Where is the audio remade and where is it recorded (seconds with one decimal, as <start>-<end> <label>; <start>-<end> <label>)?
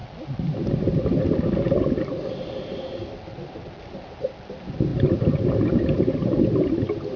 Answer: 0.0-7.2 recorded